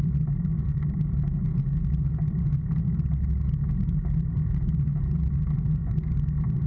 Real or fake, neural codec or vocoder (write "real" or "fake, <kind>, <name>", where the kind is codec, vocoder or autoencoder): real